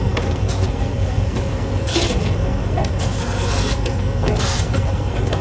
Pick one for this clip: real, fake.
fake